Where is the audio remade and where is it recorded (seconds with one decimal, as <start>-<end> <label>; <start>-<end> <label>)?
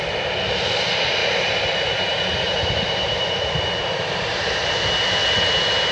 0.0-1.2 recorded; 1.2-4.7 remade; 4.7-5.2 recorded; 5.2-5.9 remade